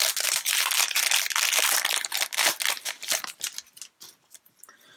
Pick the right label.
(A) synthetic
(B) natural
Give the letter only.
B